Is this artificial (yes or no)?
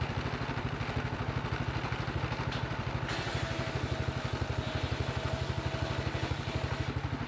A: no